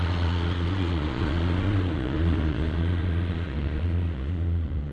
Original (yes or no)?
no